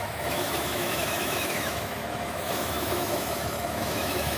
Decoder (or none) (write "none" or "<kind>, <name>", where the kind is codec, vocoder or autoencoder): autoencoder, DAC-VAE